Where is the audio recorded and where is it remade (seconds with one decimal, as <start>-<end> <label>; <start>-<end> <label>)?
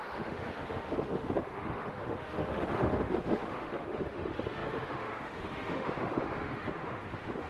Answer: 0.0-7.5 remade